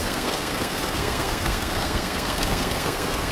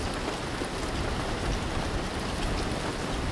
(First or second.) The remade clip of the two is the first